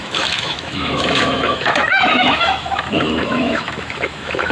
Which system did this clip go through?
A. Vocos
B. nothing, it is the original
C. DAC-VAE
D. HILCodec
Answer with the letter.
C